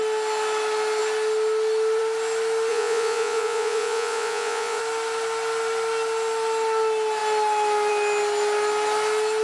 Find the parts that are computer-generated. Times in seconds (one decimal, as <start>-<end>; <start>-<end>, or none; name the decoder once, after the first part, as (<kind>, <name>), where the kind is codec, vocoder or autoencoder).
2.7-4.8 (vocoder, Vocos)